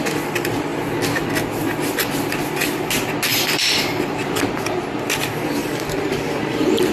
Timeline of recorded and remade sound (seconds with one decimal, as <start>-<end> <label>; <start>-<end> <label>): 0.0-0.7 recorded; 0.7-1.3 remade; 1.3-3.3 recorded; 3.3-4.4 remade; 4.4-5.6 recorded; 5.6-6.2 remade; 6.2-6.9 recorded